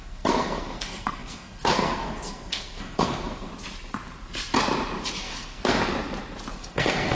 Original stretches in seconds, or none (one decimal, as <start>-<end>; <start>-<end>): 3.5-5.2; 5.8-6.5

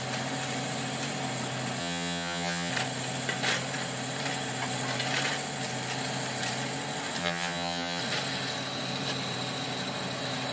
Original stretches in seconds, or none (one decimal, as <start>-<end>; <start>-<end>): 0.0-1.8; 2.7-7.2; 8.0-10.5

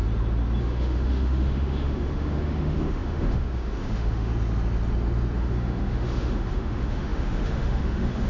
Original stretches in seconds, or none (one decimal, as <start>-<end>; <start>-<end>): 0.0-0.6; 4.3-5.4

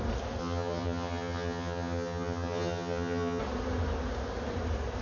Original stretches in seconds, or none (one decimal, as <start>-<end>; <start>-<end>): 0.0-0.4; 3.4-5.0

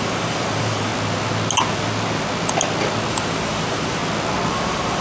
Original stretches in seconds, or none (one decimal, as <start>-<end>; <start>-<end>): 0.9-3.1; 4.0-4.5

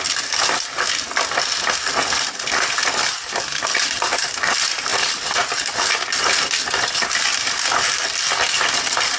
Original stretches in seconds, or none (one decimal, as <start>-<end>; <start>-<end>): 0.0-9.2

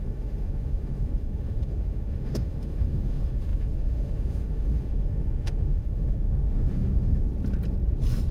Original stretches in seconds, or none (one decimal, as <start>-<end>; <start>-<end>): 7.3-8.3

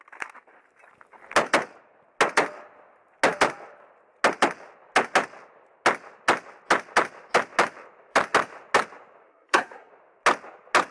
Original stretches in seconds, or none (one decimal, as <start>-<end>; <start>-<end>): 0.0-9.3; 9.9-10.9